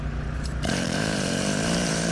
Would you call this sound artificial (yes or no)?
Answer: yes